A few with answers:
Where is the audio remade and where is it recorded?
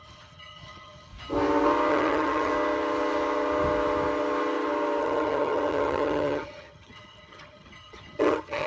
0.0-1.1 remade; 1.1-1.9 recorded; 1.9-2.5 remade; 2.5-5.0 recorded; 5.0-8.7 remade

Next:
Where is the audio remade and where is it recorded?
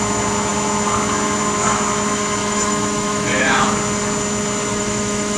0.0-2.4 recorded; 2.4-3.6 remade; 3.6-4.7 recorded; 4.7-5.4 remade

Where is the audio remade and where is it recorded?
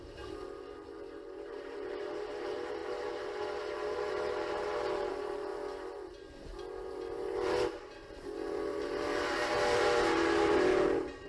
0.0-5.5 remade; 5.5-6.6 recorded; 6.6-11.3 remade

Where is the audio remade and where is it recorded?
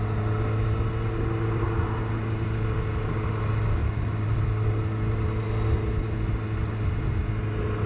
0.0-3.8 recorded; 3.8-4.4 remade; 4.4-7.9 recorded